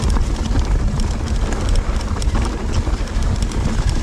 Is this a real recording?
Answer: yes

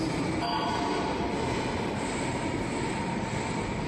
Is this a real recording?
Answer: yes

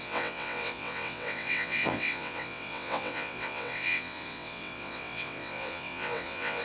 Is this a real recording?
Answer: no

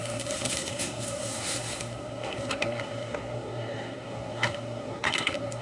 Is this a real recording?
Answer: no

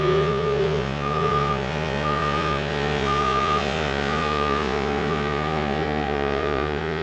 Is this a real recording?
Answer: no